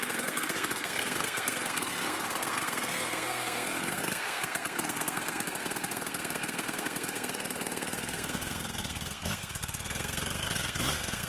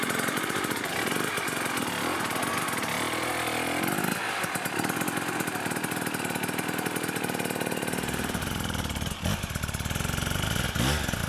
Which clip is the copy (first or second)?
first